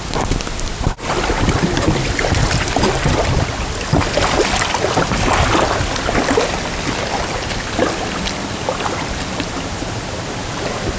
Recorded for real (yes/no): yes